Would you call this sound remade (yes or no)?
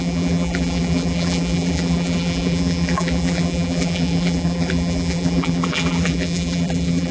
yes